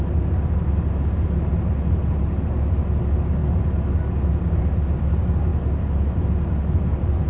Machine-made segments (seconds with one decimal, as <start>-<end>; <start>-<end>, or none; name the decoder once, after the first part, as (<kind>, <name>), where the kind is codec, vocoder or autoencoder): none